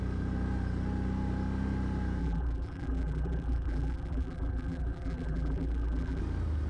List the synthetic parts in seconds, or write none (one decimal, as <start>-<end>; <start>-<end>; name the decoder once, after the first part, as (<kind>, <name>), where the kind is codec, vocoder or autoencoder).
2.2-6.2 (vocoder, BigVGAN v2)